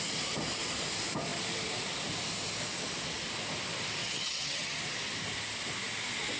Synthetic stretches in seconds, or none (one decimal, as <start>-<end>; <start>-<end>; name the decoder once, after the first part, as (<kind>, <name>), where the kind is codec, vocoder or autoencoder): 4.0-4.8 (vocoder, HiFi-GAN)